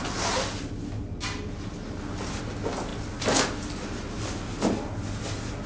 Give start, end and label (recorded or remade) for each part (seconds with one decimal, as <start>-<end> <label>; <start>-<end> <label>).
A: 0.0-5.7 recorded